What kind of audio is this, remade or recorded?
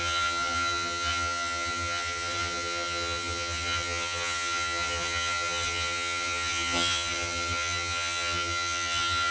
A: remade